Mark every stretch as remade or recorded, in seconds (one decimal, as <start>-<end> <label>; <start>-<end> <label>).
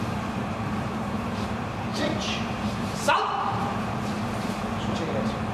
0.0-4.6 remade; 4.6-5.5 recorded